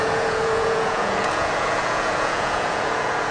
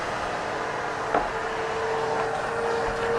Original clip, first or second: second